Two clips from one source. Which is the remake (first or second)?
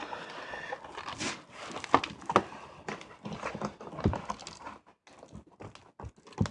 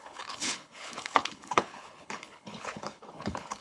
second